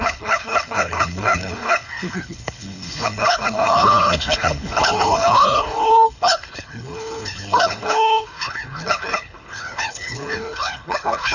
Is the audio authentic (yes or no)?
no